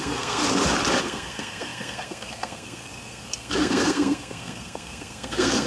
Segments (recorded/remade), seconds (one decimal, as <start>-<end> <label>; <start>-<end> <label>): 0.0-0.4 remade; 0.4-1.0 recorded; 1.0-5.7 remade